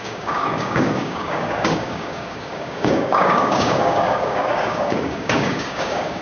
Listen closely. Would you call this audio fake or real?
fake